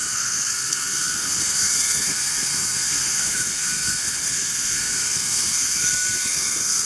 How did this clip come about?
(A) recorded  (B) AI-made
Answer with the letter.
B